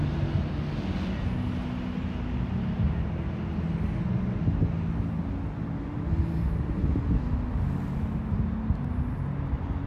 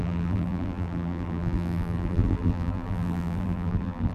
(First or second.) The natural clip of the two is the first